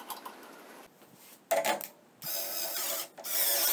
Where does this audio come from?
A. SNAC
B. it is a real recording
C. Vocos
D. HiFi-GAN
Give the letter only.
B